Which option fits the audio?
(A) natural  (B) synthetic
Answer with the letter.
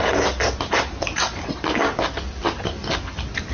A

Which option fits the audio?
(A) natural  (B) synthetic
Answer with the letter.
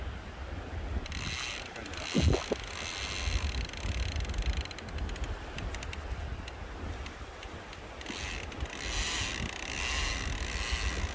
A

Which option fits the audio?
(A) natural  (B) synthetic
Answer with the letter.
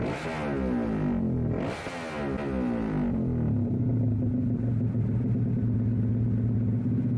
A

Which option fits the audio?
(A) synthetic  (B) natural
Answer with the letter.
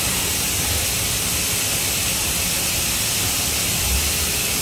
B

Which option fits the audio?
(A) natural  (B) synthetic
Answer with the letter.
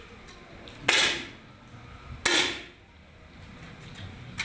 A